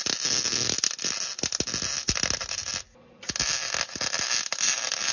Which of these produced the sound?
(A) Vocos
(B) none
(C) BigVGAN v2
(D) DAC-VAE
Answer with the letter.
B